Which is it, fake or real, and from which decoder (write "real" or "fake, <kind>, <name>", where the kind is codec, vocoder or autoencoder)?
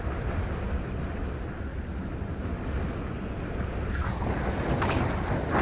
real